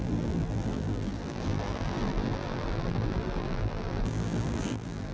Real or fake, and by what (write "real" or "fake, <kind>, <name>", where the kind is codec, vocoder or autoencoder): fake, vocoder, BigVGAN v2